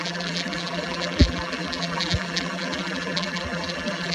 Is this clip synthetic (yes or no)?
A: yes